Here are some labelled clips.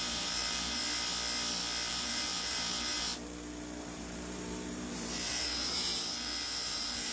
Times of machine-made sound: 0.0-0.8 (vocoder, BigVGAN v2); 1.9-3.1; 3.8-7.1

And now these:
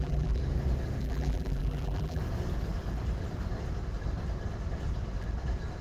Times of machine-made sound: 0.0-0.4 (vocoder, BigVGAN v2); 1.0-2.2

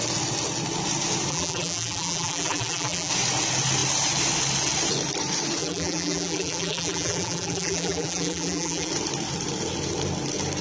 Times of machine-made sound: 1.3-3.1 (vocoder, BigVGAN v2); 5.6-8.9

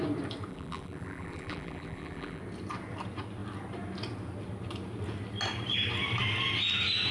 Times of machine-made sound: 0.5-2.4 (vocoder, BigVGAN v2)

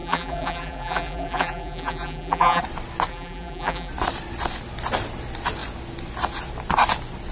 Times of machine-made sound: 0.0-2.6 (vocoder, BigVGAN v2); 3.1-3.9